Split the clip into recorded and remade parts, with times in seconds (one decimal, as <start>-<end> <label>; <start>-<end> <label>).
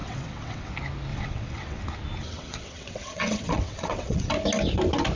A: 0.0-0.7 remade; 0.7-1.1 recorded; 1.1-1.8 remade; 1.8-2.2 recorded; 2.2-4.3 remade; 4.3-5.2 recorded